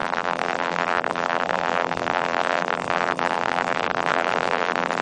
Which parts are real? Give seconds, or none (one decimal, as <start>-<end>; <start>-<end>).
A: none